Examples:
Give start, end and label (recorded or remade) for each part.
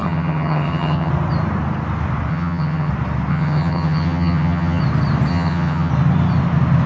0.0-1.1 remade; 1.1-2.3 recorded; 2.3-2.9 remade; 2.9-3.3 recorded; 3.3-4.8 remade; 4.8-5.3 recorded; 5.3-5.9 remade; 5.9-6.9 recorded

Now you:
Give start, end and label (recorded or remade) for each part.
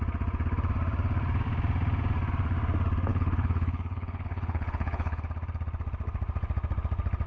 0.0-3.1 recorded; 3.1-5.2 remade; 5.2-7.3 recorded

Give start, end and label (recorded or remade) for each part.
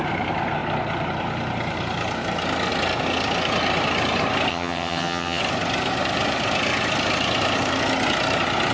0.0-4.5 recorded; 4.5-5.4 remade; 5.4-8.7 recorded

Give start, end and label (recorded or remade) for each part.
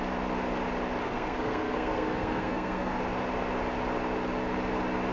0.0-1.0 recorded; 1.0-3.0 remade; 3.0-5.1 recorded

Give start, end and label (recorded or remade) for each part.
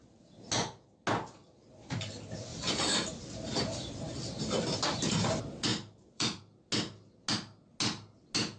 0.0-2.5 recorded; 2.5-4.0 remade; 4.0-5.7 recorded; 5.7-6.4 remade; 6.4-8.6 recorded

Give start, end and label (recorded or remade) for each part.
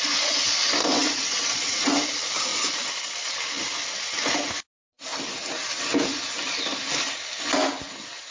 0.0-0.8 recorded; 0.8-2.0 remade; 2.0-8.3 recorded